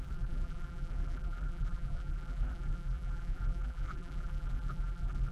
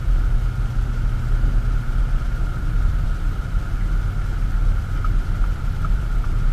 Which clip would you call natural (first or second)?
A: second